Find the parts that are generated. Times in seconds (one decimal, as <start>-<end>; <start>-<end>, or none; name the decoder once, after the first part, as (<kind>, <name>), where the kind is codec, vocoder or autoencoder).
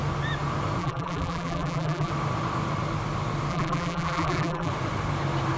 0.8-2.1 (vocoder, BigVGAN v2); 3.5-4.7